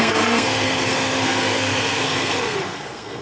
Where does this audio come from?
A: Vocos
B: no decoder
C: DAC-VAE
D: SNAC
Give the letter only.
D